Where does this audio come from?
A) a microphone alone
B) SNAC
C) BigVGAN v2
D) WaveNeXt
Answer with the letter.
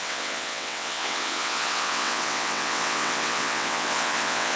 D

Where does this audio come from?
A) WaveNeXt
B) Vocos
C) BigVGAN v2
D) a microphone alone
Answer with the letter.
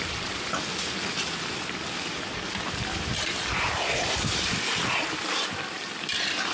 D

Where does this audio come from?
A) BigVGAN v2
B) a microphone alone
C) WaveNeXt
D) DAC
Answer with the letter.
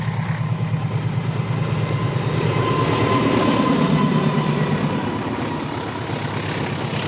B